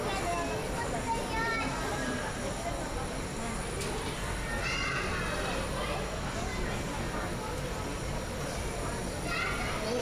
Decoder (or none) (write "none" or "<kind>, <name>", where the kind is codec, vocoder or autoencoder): none